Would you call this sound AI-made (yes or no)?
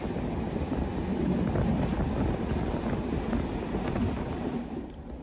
no